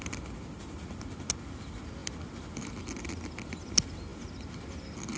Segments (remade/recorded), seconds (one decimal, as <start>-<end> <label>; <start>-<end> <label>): 0.0-5.2 recorded